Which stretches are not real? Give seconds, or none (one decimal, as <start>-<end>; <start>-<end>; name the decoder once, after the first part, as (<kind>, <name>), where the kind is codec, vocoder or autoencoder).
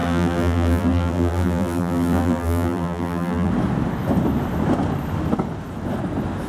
0.0-3.5 (vocoder, BigVGAN v2)